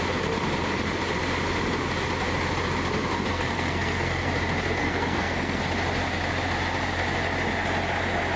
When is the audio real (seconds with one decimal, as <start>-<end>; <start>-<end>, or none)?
0.0-3.3; 4.3-4.8; 5.6-8.4